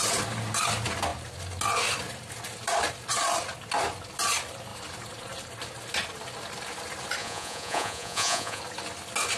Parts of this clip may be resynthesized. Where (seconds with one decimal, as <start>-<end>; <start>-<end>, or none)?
7.2-8.6